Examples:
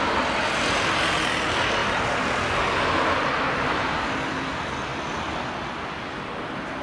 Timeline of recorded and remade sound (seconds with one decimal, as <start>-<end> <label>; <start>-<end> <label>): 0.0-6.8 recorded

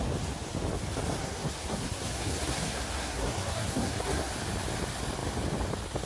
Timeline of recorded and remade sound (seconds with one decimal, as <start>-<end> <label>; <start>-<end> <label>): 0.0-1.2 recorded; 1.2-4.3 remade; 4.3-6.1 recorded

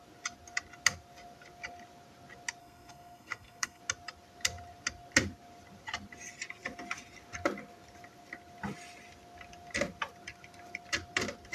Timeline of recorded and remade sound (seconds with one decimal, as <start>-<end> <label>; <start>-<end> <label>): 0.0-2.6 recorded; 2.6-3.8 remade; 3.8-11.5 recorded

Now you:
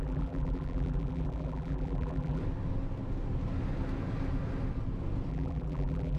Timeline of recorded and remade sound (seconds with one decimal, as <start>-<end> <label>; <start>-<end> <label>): 0.0-2.4 remade; 2.4-5.3 recorded; 5.3-6.2 remade

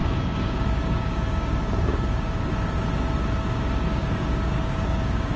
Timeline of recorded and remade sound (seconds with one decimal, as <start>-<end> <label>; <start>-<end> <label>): 0.0-2.5 remade; 2.5-3.9 recorded; 3.9-5.4 remade

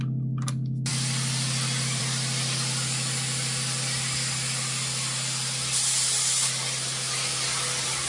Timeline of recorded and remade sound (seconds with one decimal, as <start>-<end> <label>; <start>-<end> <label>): 0.0-8.1 recorded

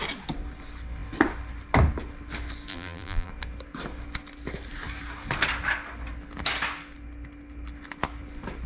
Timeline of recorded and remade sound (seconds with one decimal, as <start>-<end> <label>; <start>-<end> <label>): 0.0-2.7 recorded; 2.7-3.3 remade; 3.3-8.7 recorded

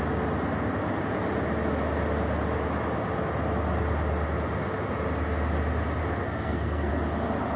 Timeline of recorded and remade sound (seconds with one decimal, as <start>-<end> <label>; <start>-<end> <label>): 0.0-6.0 recorded; 6.0-6.9 remade; 6.9-7.6 recorded